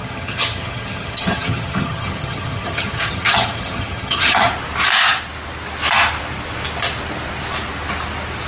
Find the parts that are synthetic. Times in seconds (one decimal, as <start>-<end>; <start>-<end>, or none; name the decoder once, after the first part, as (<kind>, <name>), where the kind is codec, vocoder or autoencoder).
0.0-4.5 (vocoder, HiFi-GAN)